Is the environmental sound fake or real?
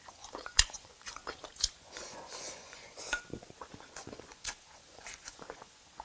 fake